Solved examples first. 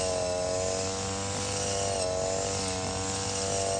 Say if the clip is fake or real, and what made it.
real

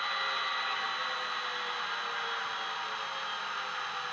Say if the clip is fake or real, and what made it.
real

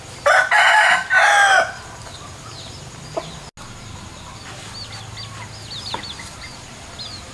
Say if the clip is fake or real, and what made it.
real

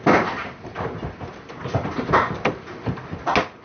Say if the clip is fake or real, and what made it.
real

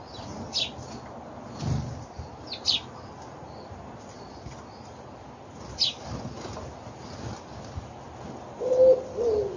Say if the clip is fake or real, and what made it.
real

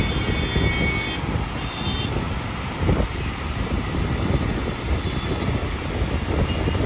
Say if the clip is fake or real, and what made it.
real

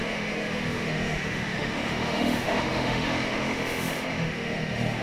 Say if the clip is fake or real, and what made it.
fake, autoencoder, DAC-VAE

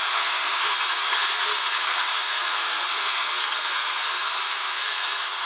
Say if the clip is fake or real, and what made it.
fake, codec, SNAC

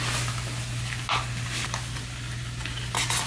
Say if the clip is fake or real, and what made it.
real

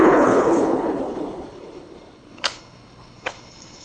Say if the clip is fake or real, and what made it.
fake, codec, HILCodec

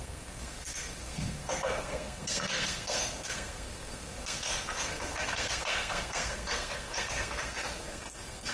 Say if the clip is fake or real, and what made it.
fake, codec, SNAC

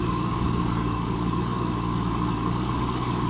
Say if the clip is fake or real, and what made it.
fake, codec, DAC